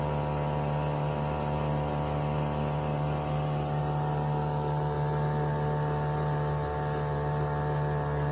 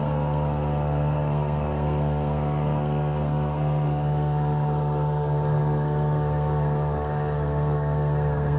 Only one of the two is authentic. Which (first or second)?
first